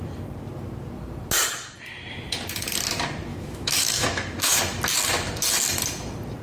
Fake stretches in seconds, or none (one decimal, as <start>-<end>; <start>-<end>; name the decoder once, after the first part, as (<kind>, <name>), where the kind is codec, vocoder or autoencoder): 3.3-4.6 (autoencoder, DAC-VAE)